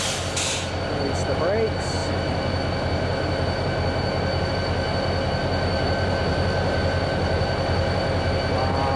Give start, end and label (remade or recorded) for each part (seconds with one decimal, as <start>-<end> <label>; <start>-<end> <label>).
0.0-9.0 recorded